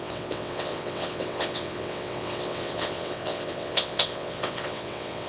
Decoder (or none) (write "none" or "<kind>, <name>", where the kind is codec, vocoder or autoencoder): vocoder, WaveNeXt